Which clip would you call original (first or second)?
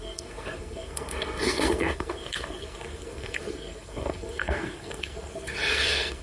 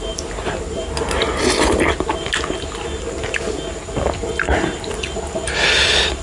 second